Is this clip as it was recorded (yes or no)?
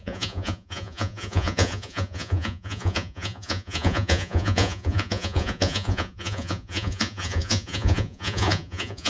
no